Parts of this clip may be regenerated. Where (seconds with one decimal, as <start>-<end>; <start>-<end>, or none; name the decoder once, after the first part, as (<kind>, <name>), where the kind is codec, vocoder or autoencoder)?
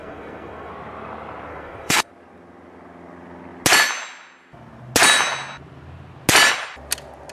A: 0.0-0.7 (codec, SNAC); 1.5-2.1